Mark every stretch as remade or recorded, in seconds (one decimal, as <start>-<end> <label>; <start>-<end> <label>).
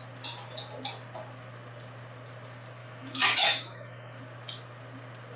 0.0-2.8 recorded; 2.8-4.2 remade; 4.2-5.4 recorded